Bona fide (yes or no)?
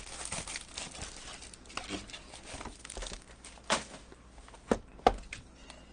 yes